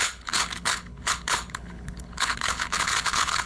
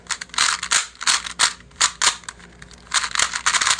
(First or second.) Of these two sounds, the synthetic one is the first